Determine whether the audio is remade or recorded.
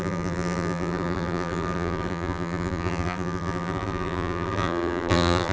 remade